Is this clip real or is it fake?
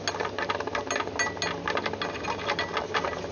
real